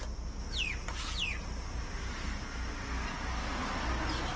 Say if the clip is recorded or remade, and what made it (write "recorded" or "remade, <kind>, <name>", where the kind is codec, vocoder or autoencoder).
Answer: recorded